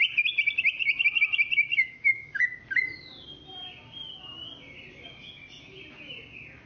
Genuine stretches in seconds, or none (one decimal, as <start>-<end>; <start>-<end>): 0.0-1.7; 2.4-6.7